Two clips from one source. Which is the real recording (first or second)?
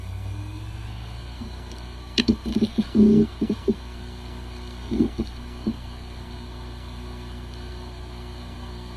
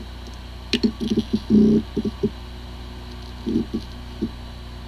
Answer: second